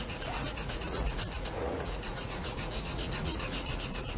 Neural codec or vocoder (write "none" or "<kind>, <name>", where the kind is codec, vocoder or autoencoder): vocoder, Vocos